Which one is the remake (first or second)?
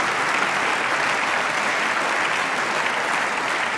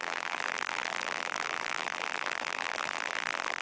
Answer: second